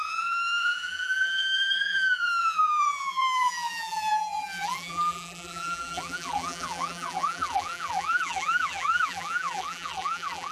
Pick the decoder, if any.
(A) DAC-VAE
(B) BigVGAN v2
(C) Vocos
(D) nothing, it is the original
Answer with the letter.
B